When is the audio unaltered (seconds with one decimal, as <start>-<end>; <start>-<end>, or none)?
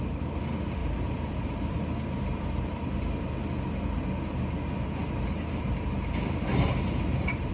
0.0-0.8; 3.3-6.5